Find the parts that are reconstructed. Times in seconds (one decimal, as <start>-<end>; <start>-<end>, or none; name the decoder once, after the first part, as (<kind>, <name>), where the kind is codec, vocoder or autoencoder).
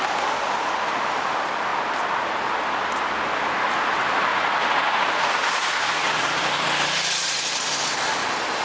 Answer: 4.3-6.4 (vocoder, Vocos)